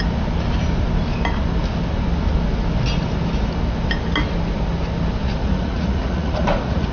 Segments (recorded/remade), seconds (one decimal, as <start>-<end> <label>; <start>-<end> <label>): 0.0-5.2 recorded; 5.2-6.9 remade